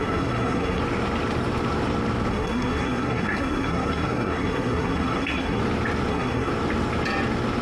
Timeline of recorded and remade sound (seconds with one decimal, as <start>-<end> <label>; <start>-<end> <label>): 0.0-0.8 remade; 0.8-2.3 recorded; 2.3-5.6 remade; 5.6-6.1 recorded; 6.1-6.5 remade; 6.5-7.6 recorded